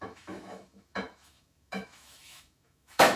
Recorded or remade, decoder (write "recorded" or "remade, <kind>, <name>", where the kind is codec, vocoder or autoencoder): remade, autoencoder, DAC-VAE